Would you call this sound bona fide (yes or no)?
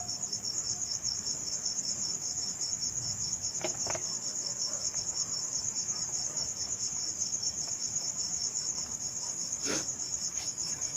no